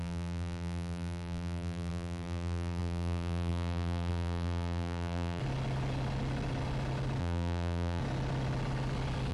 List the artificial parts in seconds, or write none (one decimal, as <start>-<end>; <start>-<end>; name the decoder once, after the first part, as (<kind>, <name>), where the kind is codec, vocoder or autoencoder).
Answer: 0.0-5.4 (vocoder, BigVGAN v2); 7.2-8.0